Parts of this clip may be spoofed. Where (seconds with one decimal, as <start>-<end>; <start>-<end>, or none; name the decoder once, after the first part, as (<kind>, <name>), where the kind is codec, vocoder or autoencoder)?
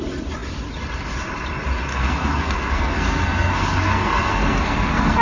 1.9-5.2 (codec, SNAC)